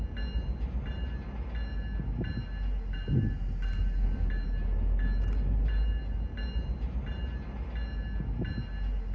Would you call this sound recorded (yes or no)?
yes